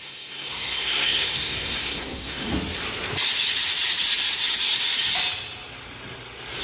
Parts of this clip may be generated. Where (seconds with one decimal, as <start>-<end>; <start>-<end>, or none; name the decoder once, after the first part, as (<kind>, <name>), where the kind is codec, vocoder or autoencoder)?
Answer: 0.0-2.5 (codec, SNAC)